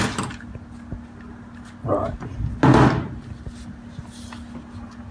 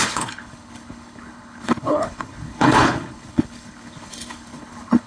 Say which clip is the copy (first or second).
second